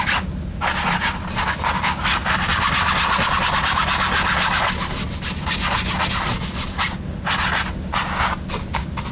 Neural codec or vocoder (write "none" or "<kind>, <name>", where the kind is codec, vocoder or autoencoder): none